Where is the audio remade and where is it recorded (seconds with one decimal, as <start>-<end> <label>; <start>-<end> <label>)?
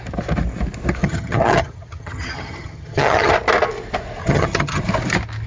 0.0-1.0 recorded; 1.0-3.3 remade; 3.3-4.2 recorded; 4.2-4.8 remade; 4.8-5.5 recorded